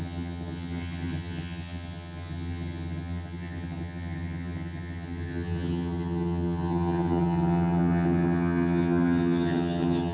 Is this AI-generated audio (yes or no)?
yes